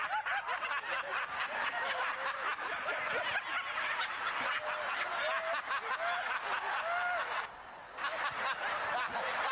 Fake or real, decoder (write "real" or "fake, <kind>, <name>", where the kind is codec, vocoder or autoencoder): real